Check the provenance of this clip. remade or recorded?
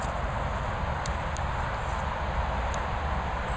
recorded